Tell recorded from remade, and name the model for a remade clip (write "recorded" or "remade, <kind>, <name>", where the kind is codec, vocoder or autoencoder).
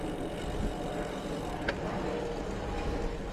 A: recorded